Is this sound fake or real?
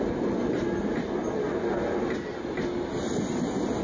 real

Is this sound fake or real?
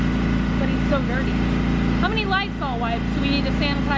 real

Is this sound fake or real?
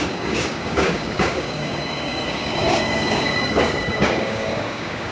fake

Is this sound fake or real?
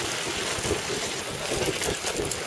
real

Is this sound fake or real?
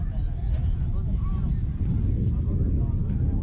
real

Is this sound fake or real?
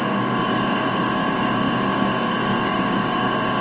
fake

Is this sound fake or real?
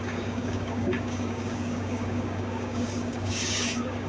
fake